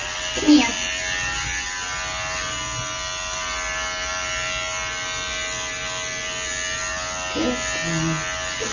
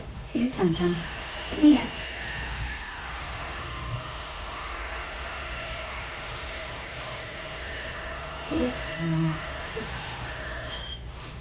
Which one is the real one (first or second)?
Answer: first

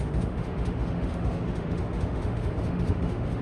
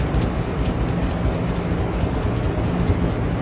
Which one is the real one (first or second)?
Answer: second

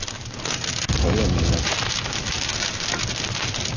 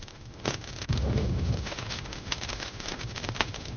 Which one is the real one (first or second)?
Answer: first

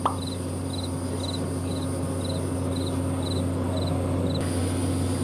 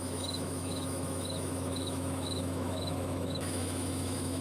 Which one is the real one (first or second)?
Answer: first